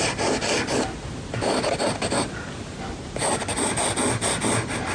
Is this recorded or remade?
recorded